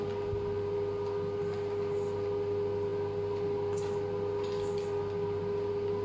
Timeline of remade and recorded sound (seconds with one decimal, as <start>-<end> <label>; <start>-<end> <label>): 0.0-6.0 recorded